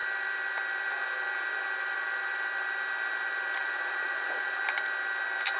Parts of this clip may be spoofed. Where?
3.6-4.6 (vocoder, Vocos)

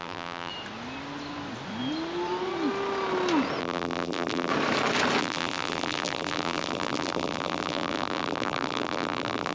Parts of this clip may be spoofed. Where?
0.0-0.5 (vocoder, BigVGAN v2); 3.6-4.5; 5.2-9.5

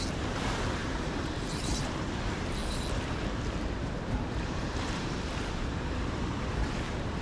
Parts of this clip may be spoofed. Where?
0.0-2.6 (vocoder, BigVGAN v2); 3.7-7.2

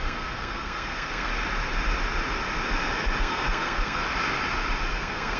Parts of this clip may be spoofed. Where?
0.0-1.3 (codec, SNAC); 3.2-4.0; 4.9-5.4

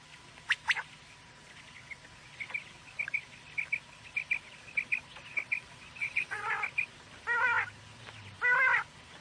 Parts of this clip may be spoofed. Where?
6.0-6.5 (vocoder, WaveNeXt)

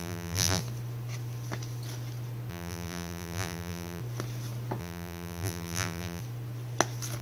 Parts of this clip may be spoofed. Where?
0.0-0.6 (vocoder, BigVGAN v2); 2.5-4.0; 4.8-6.2

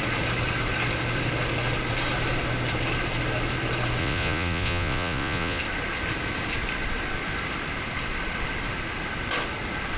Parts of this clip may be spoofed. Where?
4.0-5.6 (vocoder, Vocos)